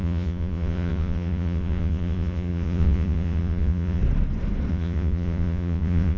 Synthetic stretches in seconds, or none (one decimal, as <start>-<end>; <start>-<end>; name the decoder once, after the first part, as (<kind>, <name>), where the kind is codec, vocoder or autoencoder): 0.0-4.0 (vocoder, Vocos); 4.7-6.2